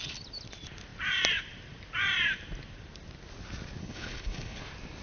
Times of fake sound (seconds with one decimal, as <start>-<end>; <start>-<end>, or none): 3.8-4.6